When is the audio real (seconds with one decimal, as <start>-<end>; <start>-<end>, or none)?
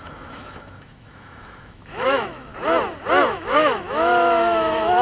2.5-3.2